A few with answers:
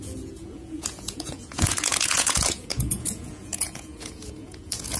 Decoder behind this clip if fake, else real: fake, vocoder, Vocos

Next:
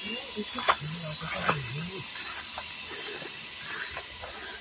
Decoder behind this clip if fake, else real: real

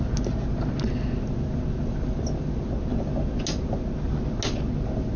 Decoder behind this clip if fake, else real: real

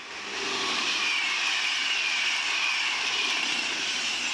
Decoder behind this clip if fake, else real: real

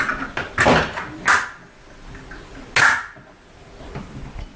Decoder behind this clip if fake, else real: real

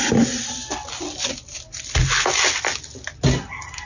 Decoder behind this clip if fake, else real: real